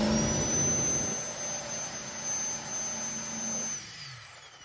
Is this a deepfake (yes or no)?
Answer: no